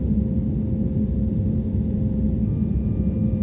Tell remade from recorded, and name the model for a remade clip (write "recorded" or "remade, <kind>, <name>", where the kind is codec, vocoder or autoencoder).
recorded